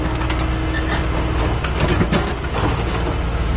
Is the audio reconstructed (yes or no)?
no